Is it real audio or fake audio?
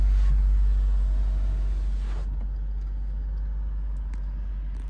real